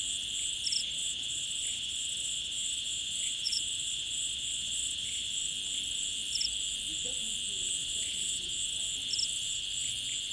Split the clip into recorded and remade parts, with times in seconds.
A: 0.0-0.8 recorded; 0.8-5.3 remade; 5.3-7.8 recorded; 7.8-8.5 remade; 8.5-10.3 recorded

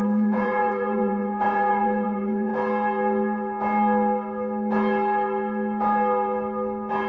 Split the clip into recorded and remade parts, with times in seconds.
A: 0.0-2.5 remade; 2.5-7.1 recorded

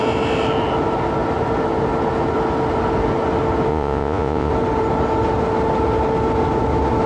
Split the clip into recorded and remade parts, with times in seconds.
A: 0.0-3.7 recorded; 3.7-4.5 remade; 4.5-7.1 recorded

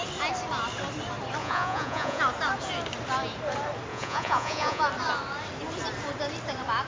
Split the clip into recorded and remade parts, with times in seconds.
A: 0.0-1.4 recorded; 1.4-2.2 remade; 2.2-3.9 recorded; 3.9-4.8 remade; 4.8-6.9 recorded